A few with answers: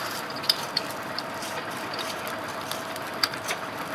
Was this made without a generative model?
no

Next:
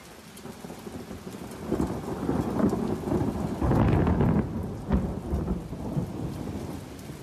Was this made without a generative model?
yes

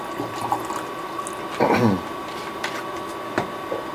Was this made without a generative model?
yes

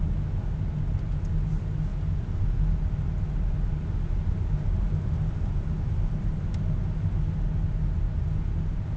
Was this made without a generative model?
yes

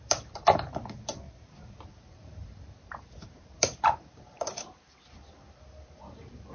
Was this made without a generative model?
no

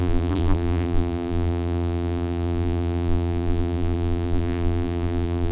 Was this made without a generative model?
no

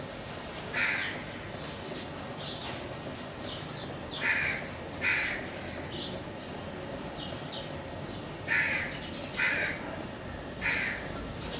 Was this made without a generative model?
yes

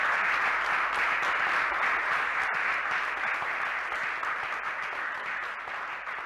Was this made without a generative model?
yes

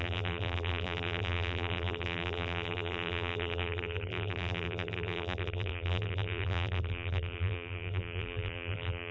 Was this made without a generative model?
no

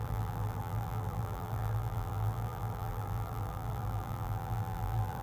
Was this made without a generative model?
no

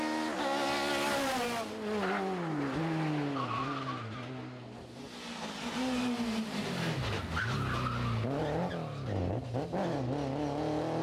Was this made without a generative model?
yes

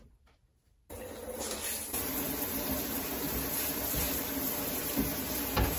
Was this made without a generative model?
no